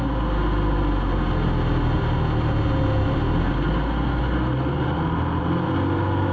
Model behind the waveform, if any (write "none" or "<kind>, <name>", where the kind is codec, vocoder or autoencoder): none